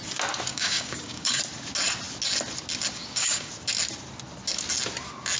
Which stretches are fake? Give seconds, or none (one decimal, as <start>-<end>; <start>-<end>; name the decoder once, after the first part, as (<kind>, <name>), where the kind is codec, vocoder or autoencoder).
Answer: 0.5-1.4 (codec, DAC); 2.9-3.5